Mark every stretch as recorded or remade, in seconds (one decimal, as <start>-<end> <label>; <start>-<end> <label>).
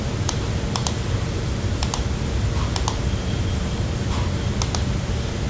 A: 0.0-5.5 recorded